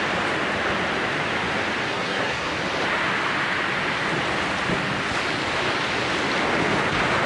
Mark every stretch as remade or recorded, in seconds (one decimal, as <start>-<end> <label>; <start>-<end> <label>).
0.0-1.9 recorded; 1.9-2.5 remade; 2.5-7.3 recorded